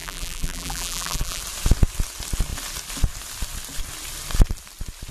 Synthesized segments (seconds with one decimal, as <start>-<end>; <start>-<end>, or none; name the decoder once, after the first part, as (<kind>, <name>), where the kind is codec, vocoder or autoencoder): 0.0-1.4 (vocoder, BigVGAN v2)